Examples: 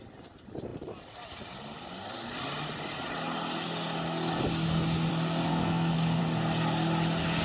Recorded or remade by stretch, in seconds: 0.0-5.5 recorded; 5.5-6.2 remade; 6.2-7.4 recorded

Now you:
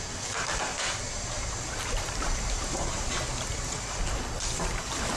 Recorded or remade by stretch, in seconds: 0.0-3.3 remade; 3.3-4.4 recorded; 4.4-5.2 remade

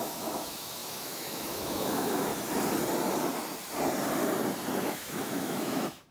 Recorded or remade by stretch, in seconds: 0.0-2.3 remade; 2.3-4.8 recorded; 4.8-6.1 remade

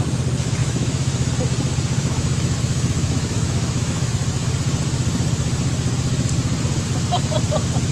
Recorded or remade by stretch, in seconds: 0.0-0.6 recorded; 0.6-1.3 remade; 1.3-2.0 recorded; 2.0-4.1 remade; 4.1-7.9 recorded

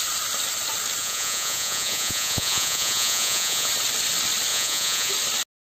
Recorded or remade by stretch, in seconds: 0.0-1.0 recorded; 1.0-3.7 remade; 3.7-4.5 recorded; 4.5-5.1 remade; 5.1-5.7 recorded

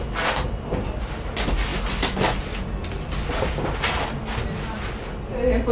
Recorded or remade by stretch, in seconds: 0.0-5.7 recorded